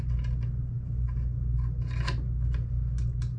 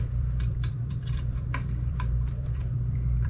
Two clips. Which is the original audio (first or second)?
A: first